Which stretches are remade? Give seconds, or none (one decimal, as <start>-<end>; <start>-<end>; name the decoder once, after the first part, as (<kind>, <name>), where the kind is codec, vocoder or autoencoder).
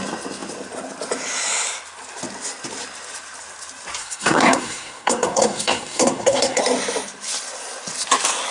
4.0-6.6 (codec, SNAC)